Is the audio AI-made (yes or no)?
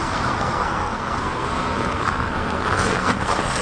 yes